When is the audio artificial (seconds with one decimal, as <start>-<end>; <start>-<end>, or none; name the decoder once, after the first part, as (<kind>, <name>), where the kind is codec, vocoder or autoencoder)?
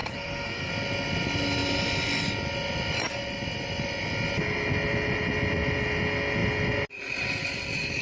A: 0.0-0.7 (codec, SNAC)